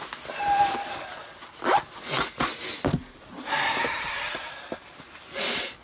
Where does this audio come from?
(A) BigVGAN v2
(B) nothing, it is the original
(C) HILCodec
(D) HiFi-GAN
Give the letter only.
B